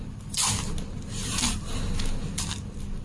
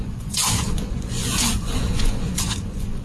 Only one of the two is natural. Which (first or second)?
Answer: first